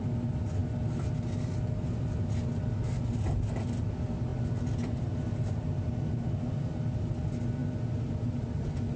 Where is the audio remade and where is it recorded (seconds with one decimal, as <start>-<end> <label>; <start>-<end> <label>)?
0.0-9.0 recorded